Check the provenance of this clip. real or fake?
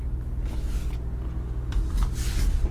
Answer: real